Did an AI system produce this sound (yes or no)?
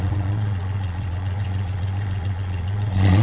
yes